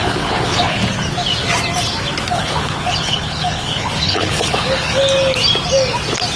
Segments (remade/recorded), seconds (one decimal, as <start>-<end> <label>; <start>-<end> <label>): 0.0-0.8 remade; 0.8-2.3 recorded; 2.3-5.0 remade; 5.0-6.4 recorded